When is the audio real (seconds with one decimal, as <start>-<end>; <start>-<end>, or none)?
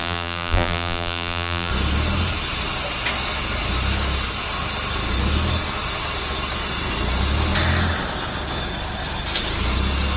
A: 1.7-10.2